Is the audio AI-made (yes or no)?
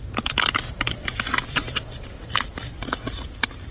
no